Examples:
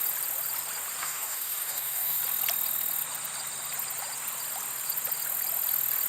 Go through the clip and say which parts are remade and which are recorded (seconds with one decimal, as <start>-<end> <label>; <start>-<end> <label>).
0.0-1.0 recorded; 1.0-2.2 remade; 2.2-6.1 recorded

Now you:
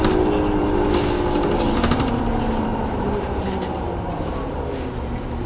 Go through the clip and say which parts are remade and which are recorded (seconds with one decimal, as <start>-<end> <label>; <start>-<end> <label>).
0.0-2.7 recorded; 2.7-4.6 remade; 4.6-5.5 recorded

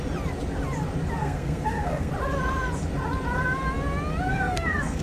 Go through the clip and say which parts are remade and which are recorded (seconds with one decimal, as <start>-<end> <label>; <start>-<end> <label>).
0.0-1.2 recorded; 1.2-2.1 remade; 2.1-4.3 recorded; 4.3-5.0 remade

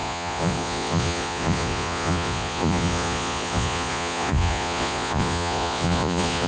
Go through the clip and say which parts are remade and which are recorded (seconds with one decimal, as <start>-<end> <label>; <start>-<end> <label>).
0.0-6.5 remade